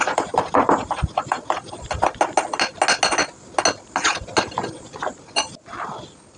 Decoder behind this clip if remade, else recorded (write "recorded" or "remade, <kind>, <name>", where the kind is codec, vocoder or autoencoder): recorded